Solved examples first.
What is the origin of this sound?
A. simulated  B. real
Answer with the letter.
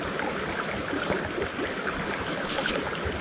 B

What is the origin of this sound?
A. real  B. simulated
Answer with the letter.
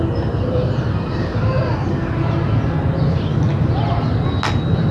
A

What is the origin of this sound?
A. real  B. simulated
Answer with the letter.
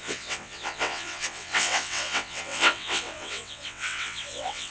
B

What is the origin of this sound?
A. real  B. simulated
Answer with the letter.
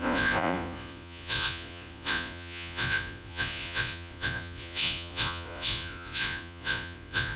B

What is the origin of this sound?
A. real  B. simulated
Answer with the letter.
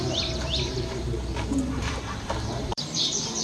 B